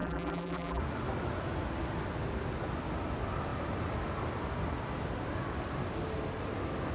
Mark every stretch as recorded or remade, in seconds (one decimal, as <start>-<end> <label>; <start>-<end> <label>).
0.0-0.8 remade; 0.8-6.9 recorded